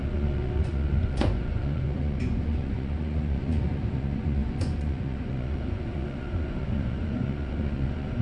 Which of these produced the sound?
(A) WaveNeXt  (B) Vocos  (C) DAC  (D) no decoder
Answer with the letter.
B